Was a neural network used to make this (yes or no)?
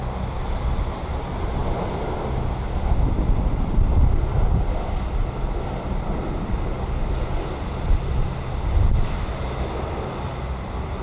no